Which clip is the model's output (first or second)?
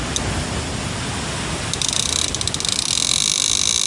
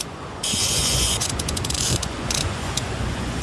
second